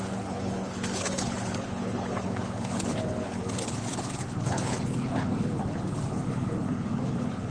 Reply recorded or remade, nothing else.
remade